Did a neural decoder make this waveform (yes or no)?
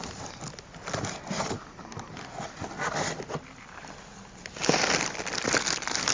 no